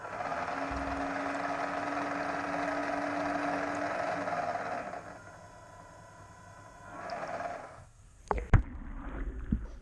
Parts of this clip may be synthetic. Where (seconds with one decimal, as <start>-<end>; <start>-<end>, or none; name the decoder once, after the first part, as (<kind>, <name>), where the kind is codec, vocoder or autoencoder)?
7.6-8.2 (codec, SNAC)